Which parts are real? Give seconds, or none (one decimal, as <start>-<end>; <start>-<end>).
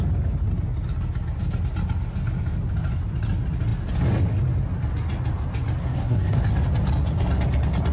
0.0-5.8; 6.4-7.9